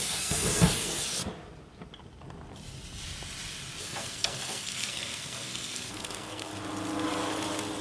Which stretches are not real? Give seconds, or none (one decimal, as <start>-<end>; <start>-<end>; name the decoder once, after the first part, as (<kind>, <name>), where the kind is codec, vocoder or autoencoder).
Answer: 0.0-1.2 (codec, SNAC); 3.8-6.5